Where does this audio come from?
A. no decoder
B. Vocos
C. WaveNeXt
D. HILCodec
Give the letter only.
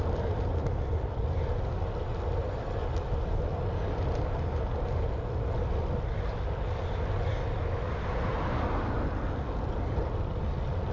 A